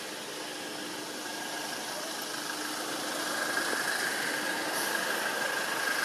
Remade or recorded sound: recorded